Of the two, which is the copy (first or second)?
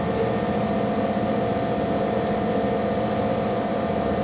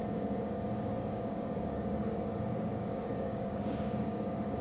second